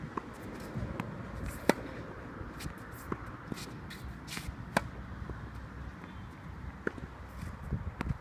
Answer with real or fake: real